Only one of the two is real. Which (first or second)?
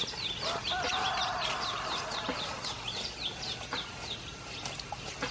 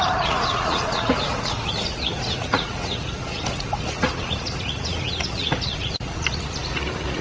first